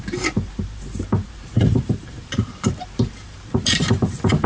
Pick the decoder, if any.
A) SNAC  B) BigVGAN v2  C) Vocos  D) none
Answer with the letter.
B